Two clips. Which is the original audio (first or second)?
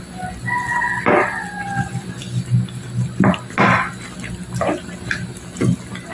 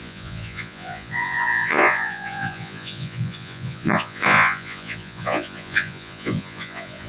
first